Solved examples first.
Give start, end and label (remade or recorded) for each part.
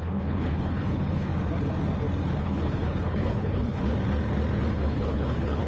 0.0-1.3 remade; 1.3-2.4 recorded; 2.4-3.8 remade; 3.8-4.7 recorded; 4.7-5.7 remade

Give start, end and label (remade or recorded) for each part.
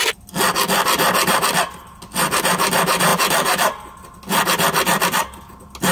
0.0-5.9 recorded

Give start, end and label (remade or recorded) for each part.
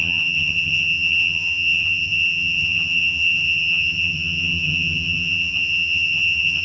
0.0-6.6 remade